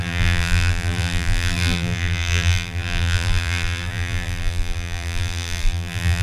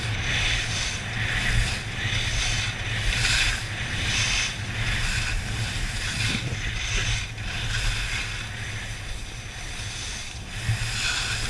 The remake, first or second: first